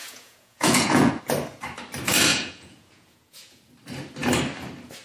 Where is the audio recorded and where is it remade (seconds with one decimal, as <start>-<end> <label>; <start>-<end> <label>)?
0.0-1.1 remade; 1.1-2.3 recorded; 2.3-3.6 remade; 3.6-5.0 recorded